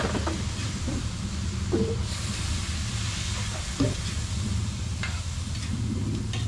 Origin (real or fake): fake